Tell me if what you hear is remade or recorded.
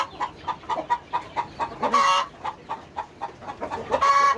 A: recorded